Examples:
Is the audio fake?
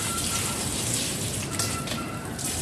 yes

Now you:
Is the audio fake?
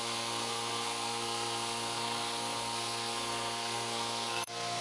yes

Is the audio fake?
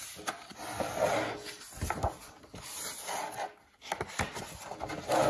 no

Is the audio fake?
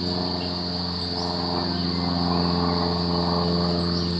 no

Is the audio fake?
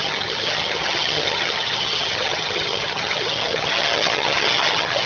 yes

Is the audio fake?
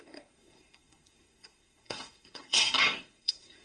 yes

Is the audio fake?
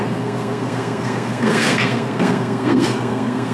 yes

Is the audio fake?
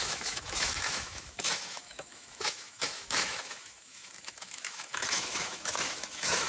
yes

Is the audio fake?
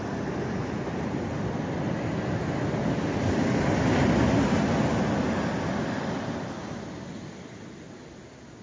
no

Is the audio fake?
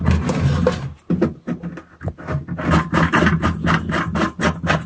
no